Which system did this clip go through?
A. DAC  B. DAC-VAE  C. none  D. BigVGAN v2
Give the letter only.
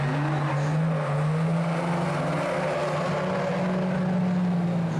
C